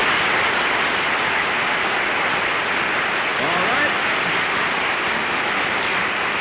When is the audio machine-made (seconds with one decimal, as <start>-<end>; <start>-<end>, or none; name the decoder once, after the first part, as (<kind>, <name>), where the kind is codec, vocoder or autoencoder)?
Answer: none